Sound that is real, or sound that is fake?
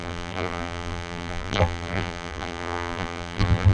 fake